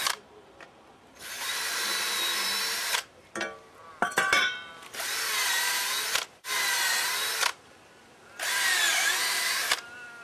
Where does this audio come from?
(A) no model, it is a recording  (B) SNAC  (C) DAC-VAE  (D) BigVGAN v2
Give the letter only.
D